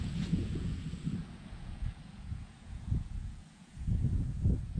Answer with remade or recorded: remade